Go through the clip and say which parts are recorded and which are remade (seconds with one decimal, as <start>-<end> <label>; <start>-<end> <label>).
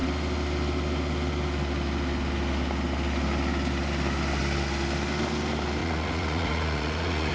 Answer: 0.0-5.8 recorded; 5.8-7.3 remade